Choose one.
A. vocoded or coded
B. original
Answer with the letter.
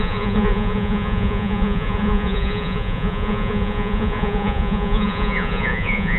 A